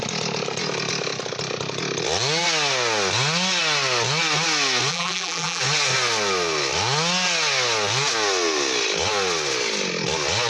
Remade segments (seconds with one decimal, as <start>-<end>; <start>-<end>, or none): 4.9-5.6